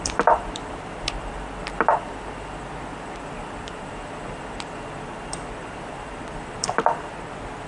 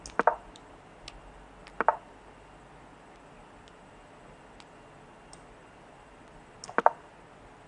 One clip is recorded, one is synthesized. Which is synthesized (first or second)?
first